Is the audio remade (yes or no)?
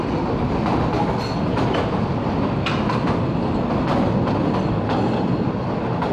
no